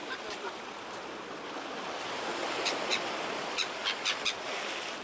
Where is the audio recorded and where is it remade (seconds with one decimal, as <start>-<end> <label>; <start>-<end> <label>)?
0.0-2.3 remade; 2.3-2.9 recorded; 2.9-3.8 remade; 3.8-5.0 recorded